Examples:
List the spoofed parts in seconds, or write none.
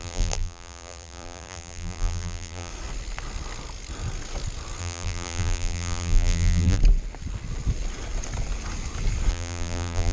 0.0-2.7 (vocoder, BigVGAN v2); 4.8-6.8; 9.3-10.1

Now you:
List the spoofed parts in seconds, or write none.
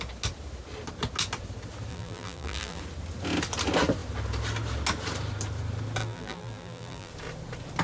1.9-2.8 (vocoder, BigVGAN v2); 6.0-7.1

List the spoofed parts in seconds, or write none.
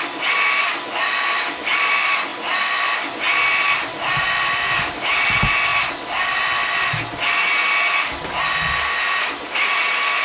0.0-5.7 (vocoder, BigVGAN v2)